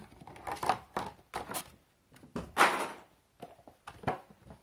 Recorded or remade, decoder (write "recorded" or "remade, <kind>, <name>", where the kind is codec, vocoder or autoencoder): recorded